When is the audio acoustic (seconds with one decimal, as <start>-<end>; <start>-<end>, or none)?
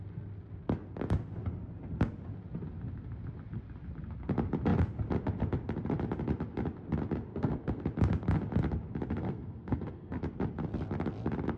0.0-7.3; 7.8-9.2; 10.2-11.6